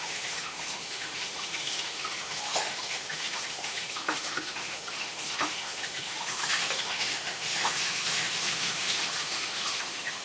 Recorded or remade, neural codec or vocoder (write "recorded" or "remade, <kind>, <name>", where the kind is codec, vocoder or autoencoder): remade, autoencoder, DAC-VAE